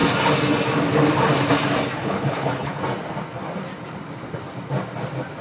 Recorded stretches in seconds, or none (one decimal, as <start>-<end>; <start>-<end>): 0.0-2.0; 2.8-5.4

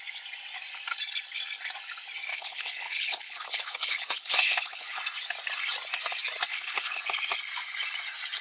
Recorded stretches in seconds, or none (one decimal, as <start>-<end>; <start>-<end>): 0.0-2.3; 5.0-6.5; 7.0-8.4

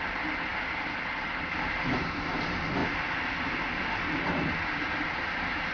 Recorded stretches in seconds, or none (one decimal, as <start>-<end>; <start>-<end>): 0.0-5.7

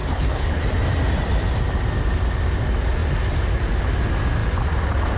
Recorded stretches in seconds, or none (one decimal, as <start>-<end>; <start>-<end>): 0.6-5.2

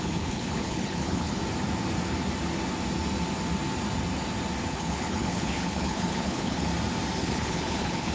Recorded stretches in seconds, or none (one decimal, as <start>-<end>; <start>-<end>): 1.4-4.7; 6.7-7.2

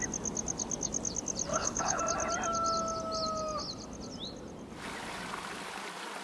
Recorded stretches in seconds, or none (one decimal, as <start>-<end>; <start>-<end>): 0.0-1.5; 2.0-6.2